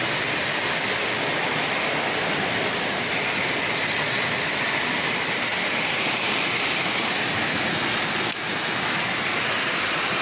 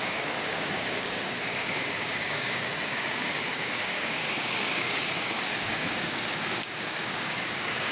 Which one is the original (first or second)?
first